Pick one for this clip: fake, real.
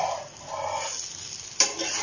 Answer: real